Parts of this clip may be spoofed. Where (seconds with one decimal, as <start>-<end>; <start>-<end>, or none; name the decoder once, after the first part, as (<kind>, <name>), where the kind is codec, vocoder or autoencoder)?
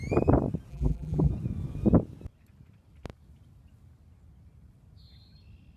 0.7-1.3 (vocoder, BigVGAN v2)